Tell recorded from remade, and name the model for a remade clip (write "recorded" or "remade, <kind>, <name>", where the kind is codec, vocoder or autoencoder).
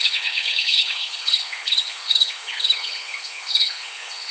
remade, codec, HILCodec